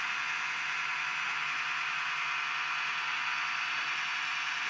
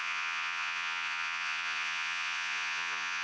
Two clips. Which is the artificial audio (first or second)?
second